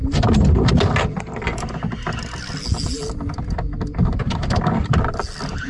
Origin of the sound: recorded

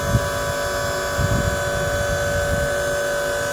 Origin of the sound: recorded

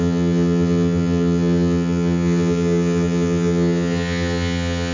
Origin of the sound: remade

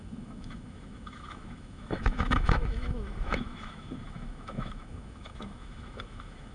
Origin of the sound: remade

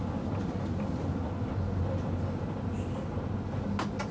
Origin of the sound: recorded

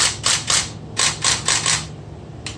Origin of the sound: recorded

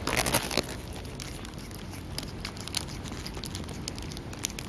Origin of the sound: recorded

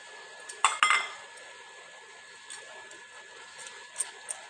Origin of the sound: recorded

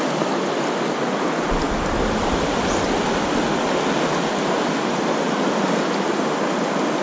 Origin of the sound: recorded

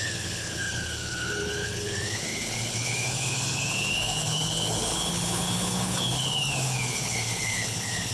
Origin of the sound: remade